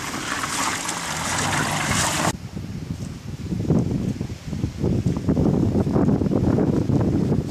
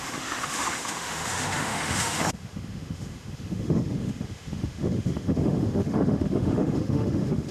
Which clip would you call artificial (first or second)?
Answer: second